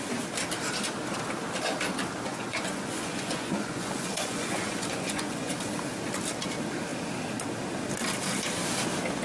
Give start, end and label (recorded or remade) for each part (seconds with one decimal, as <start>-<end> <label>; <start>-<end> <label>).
0.0-2.3 recorded; 2.3-5.5 remade; 5.5-9.2 recorded